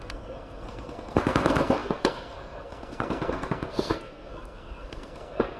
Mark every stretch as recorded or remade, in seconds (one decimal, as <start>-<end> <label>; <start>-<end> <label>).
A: 0.0-5.6 remade